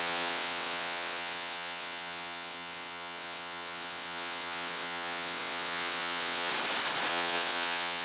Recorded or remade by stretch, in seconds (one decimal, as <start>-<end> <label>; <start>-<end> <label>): 0.0-6.5 remade; 6.5-7.1 recorded; 7.1-8.0 remade